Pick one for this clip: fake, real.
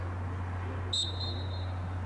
real